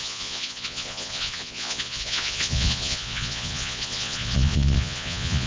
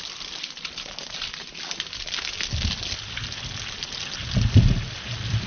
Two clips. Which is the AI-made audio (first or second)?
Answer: first